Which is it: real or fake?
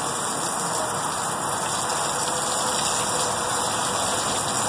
real